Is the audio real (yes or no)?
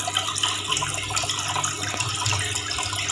yes